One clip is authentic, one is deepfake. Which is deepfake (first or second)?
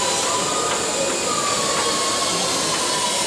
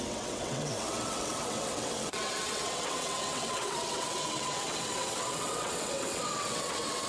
second